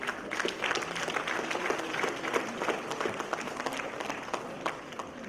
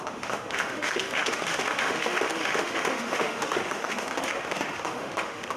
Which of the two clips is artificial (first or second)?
second